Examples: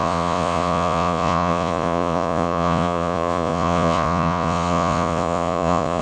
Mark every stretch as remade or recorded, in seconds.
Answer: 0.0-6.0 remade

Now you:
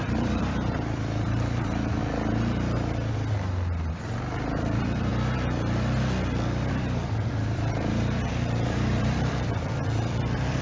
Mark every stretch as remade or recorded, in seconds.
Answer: 0.0-2.0 remade; 2.0-3.9 recorded; 3.9-5.1 remade; 5.1-6.7 recorded; 6.7-10.6 remade

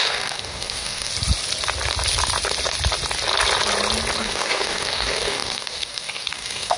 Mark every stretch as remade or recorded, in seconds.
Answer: 0.0-1.1 remade; 1.1-4.2 recorded; 4.2-6.8 remade

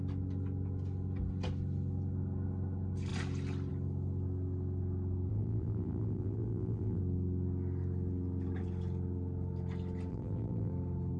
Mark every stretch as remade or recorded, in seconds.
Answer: 0.0-5.3 recorded; 5.3-7.0 remade; 7.0-10.1 recorded; 10.1-10.7 remade; 10.7-11.2 recorded

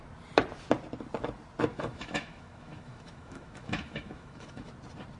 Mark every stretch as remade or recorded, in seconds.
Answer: 0.0-1.7 recorded; 1.7-4.7 remade; 4.7-5.2 recorded

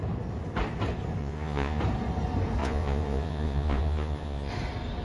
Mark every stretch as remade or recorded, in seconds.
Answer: 0.0-1.2 recorded; 1.2-1.8 remade; 1.8-2.6 recorded; 2.6-4.5 remade; 4.5-5.0 recorded

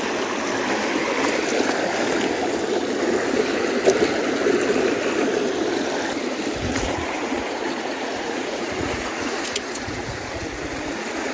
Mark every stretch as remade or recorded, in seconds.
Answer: 0.0-6.7 recorded; 6.7-11.3 remade